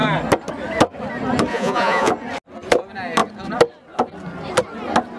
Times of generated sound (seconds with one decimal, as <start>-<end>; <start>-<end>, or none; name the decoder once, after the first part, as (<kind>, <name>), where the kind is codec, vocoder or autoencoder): 1.5-2.1 (vocoder, Vocos)